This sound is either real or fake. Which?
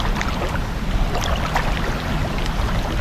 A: real